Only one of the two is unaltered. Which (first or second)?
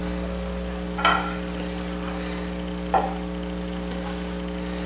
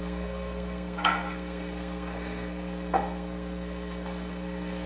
first